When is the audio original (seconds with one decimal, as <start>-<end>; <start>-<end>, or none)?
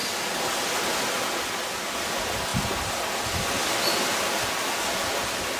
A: 0.0-5.6